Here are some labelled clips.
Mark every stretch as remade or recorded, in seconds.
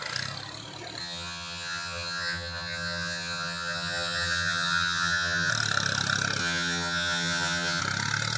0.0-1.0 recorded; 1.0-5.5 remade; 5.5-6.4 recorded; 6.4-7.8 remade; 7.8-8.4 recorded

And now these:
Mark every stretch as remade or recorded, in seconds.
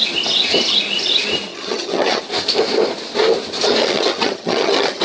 0.0-1.5 recorded; 1.5-2.2 remade; 2.2-3.8 recorded; 3.8-5.0 remade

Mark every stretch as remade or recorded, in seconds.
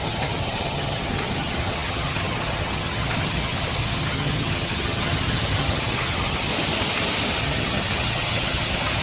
0.0-6.5 remade; 6.5-7.4 recorded; 7.4-9.0 remade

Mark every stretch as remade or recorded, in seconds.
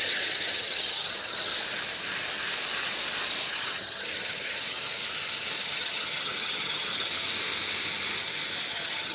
0.0-1.5 remade; 1.5-3.5 recorded; 3.5-5.0 remade; 5.0-5.6 recorded; 5.6-7.1 remade; 7.1-8.7 recorded; 8.7-9.1 remade